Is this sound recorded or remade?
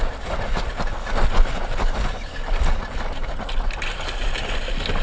recorded